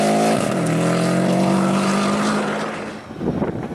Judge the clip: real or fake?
real